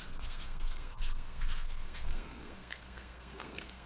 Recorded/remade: remade